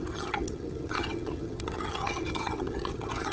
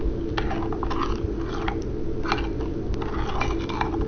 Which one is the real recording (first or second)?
second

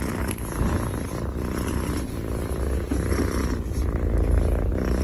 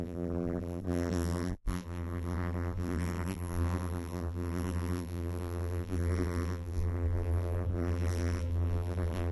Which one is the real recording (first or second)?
first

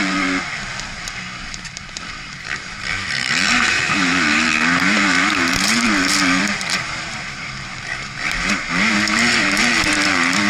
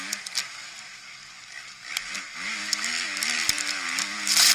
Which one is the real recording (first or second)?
second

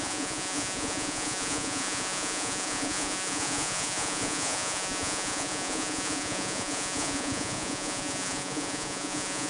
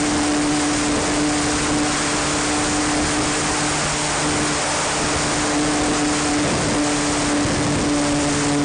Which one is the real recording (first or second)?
second